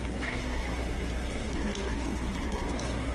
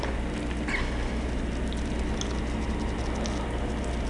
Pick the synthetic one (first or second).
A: first